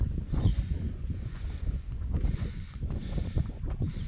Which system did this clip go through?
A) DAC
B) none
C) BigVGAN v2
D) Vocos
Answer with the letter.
D